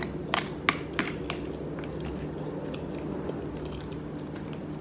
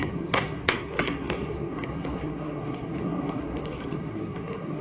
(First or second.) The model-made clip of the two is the second